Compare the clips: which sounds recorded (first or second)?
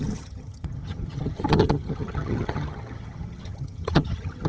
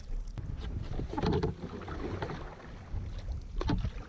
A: second